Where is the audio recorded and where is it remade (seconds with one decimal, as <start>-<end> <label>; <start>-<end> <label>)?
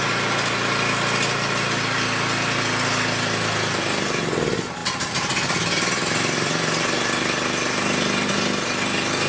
0.0-4.8 recorded; 4.8-8.3 remade; 8.3-9.3 recorded